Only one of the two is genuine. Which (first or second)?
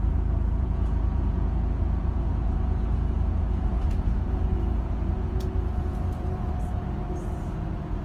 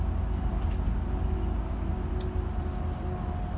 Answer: second